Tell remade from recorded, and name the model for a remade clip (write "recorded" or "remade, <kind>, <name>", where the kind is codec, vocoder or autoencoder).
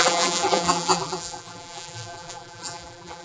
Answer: remade, vocoder, BigVGAN v2